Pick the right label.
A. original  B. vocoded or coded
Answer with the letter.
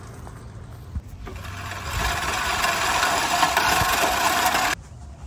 A